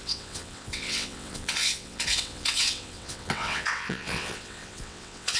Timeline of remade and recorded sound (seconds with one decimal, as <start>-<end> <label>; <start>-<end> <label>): 0.0-5.4 remade